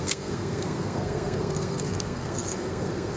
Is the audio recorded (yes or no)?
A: no